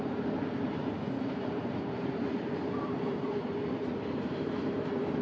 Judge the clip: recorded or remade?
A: remade